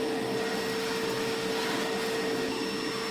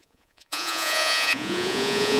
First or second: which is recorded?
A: first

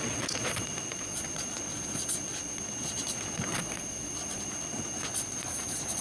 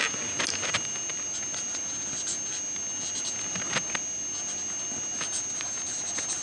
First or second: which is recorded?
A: second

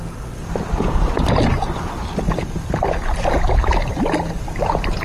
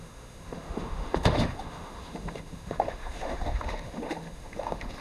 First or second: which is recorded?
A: first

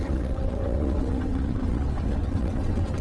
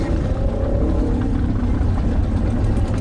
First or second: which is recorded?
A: second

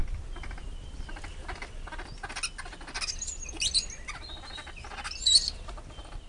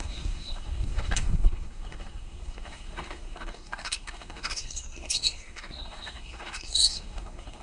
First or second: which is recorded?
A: first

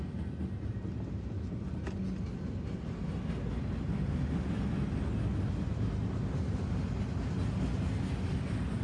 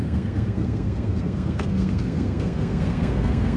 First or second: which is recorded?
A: first